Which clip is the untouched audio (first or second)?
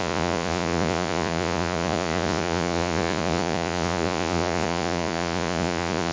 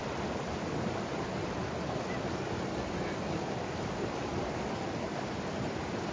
second